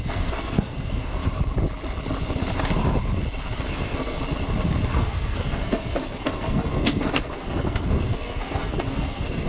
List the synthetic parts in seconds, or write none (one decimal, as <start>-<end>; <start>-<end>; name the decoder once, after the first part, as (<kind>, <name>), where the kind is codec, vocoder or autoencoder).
0.0-1.2 (codec, SNAC); 3.7-4.2; 4.9-9.5